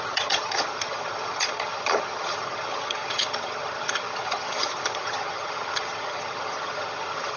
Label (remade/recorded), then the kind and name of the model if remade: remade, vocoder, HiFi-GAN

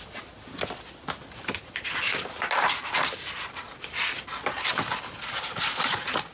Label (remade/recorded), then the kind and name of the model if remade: recorded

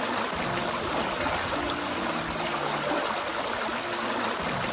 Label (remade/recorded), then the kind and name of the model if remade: recorded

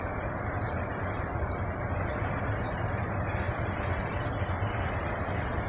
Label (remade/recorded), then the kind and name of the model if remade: recorded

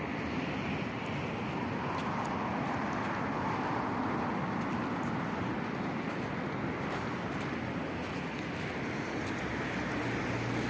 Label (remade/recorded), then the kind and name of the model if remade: recorded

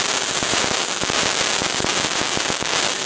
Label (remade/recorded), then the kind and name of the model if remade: recorded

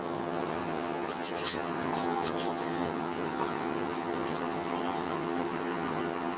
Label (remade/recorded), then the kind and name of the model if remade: remade, vocoder, HiFi-GAN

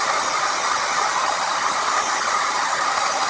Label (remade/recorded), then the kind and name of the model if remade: recorded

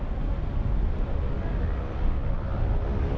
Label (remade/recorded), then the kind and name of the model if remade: recorded